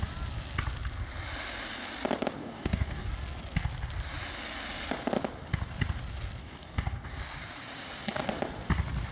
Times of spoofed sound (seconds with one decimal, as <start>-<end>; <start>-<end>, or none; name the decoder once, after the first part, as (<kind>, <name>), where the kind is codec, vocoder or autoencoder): 2.4-3.1 (codec, DAC); 6.4-7.2